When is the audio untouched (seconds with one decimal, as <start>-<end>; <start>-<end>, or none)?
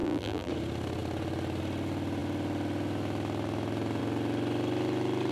0.5-5.3